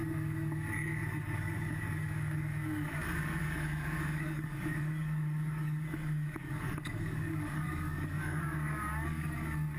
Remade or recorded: remade